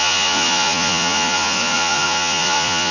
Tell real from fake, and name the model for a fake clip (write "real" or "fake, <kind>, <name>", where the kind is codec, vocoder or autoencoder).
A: fake, vocoder, Vocos